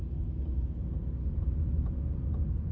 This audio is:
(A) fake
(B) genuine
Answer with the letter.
B